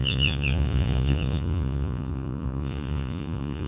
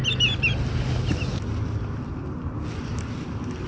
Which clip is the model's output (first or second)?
first